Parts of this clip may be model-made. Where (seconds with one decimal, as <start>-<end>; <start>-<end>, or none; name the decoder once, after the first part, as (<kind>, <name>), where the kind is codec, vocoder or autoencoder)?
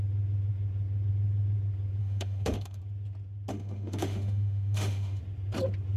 2.0-2.8 (autoencoder, DAC-VAE); 3.5-5.2